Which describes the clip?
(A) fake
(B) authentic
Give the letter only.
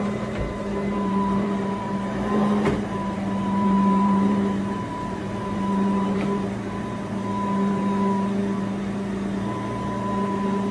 A